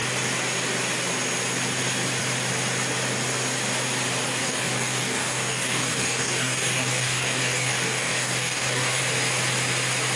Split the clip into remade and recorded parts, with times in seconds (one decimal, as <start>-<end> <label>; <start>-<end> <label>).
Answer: 0.0-4.4 recorded; 4.4-9.0 remade; 9.0-10.2 recorded